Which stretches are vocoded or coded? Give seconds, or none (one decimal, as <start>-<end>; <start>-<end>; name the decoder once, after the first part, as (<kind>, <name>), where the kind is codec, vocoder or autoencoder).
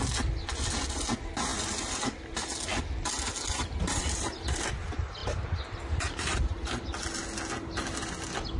5.2-6.7 (vocoder, BigVGAN v2)